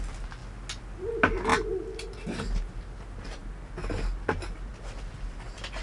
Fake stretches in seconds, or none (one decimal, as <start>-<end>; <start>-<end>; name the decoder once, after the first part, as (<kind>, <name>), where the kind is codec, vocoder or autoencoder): none